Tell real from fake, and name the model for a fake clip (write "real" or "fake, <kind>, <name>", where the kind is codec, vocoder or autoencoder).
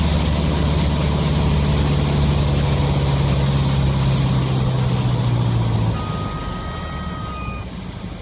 real